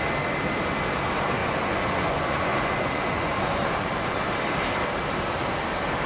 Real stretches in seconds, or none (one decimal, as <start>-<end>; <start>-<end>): 0.0-1.4; 4.3-6.1